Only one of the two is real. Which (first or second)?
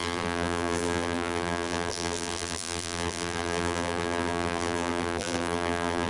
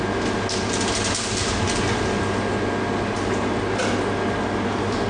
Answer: second